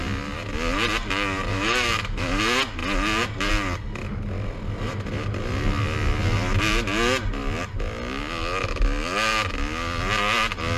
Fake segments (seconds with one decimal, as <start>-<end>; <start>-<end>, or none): 1.5-2.4